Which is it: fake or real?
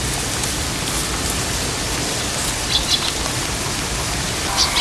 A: real